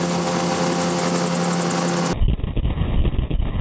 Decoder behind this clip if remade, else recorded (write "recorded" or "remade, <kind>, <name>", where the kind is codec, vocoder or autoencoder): recorded